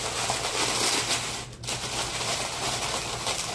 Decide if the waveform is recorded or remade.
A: recorded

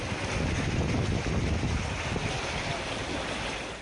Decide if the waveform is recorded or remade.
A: recorded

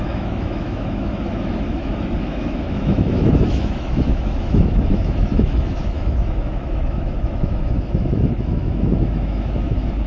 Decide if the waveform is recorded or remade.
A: remade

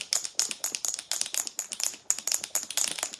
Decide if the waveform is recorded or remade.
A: recorded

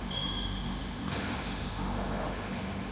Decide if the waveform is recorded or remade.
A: remade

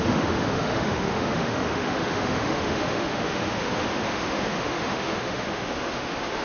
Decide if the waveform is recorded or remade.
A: remade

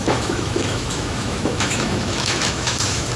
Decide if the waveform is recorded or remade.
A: remade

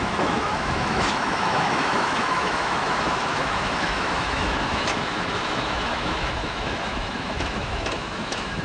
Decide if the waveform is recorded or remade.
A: remade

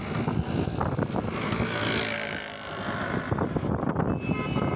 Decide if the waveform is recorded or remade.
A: recorded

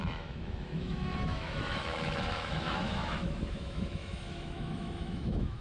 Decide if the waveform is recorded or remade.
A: remade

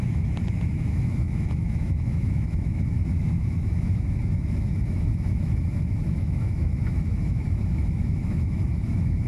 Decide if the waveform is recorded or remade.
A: remade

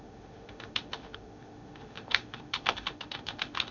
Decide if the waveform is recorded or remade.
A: remade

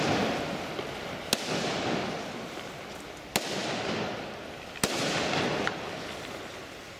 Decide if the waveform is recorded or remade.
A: recorded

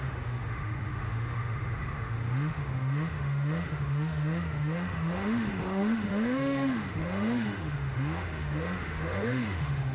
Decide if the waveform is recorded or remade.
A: remade